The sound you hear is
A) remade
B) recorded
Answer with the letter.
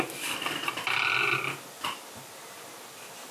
A